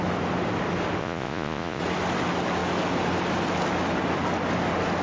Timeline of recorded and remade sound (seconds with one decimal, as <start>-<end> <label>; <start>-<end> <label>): 0.0-1.0 recorded; 1.0-1.8 remade; 1.8-5.0 recorded